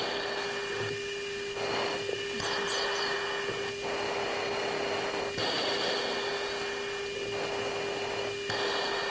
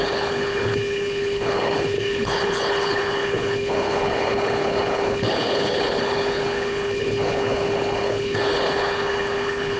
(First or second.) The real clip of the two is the first